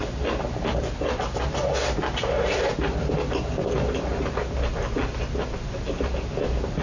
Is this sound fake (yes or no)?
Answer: no